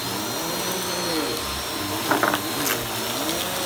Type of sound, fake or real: real